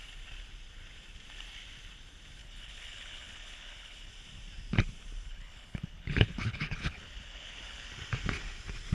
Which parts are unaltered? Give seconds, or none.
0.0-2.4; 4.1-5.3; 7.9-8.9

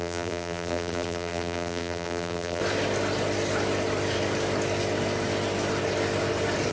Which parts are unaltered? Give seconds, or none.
2.6-6.7

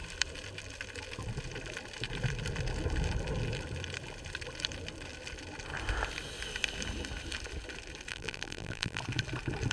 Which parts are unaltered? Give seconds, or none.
0.0-8.1; 9.0-9.7